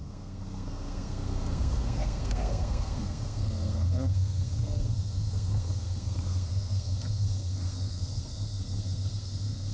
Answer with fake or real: fake